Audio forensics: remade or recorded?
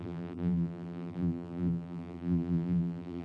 remade